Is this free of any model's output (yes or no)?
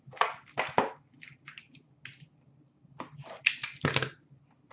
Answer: yes